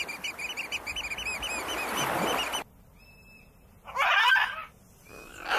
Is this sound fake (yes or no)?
no